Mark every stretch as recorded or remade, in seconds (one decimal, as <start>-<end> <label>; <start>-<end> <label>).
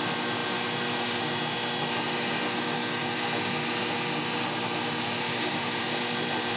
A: 0.0-6.6 recorded